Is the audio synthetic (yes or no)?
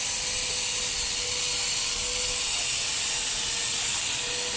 no